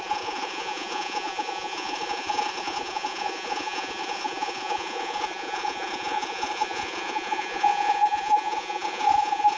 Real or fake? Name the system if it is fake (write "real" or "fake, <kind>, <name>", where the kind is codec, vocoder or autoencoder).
fake, vocoder, Vocos